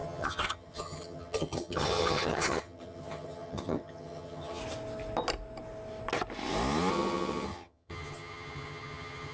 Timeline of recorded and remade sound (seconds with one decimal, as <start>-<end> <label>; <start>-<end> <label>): 0.0-4.6 remade; 4.6-6.9 recorded; 6.9-9.3 remade